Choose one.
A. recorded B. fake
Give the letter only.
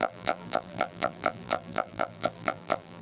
B